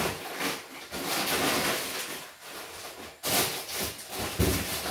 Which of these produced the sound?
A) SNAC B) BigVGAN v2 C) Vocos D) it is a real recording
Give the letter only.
B